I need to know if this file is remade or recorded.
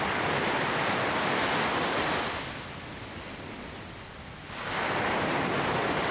recorded